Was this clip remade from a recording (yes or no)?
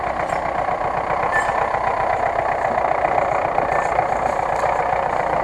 no